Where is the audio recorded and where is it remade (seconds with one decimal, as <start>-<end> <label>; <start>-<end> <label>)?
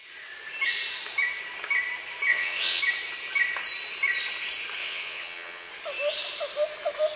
0.0-2.3 recorded; 2.3-2.8 remade; 2.8-4.8 recorded; 4.8-5.7 remade; 5.7-7.2 recorded